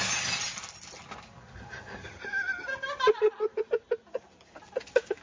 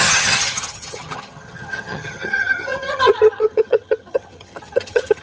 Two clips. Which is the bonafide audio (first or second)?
first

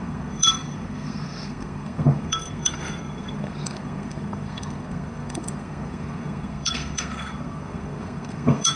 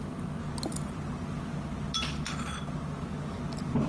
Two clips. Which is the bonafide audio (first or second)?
second